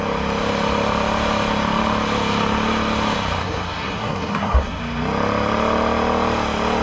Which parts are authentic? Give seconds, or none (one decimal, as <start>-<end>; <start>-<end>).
0.0-3.4; 4.8-6.8